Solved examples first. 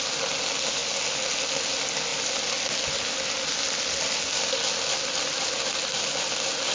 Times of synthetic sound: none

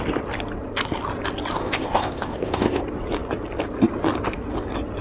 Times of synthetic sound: 1.6-2.8 (codec, ZipCodec)

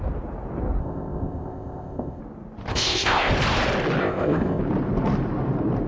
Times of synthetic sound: 0.8-2.2 (codec, ZipCodec); 2.7-3.3; 4.0-4.6

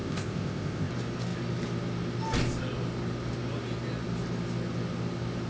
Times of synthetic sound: 0.0-0.9 (codec, ZipCodec)

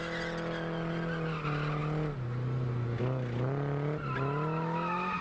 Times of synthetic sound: none

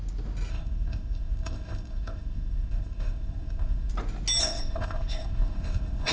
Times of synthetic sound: 0.5-3.9 (codec, ZipCodec); 4.4-6.1

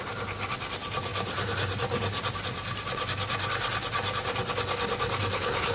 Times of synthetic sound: none